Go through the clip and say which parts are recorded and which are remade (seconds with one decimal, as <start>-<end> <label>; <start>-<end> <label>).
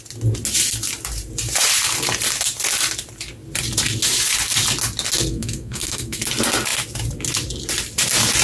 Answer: 0.0-5.3 recorded; 5.3-6.2 remade; 6.2-8.4 recorded